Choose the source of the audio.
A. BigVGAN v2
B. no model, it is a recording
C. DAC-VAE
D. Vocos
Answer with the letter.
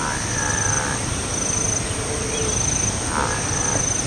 B